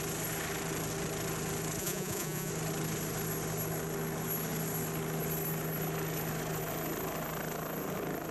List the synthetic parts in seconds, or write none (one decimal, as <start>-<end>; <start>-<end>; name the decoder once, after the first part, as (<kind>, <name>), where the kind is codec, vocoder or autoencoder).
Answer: 1.8-2.5 (vocoder, Vocos)